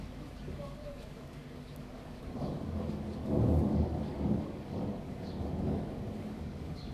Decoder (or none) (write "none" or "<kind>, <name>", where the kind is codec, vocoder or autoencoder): codec, DAC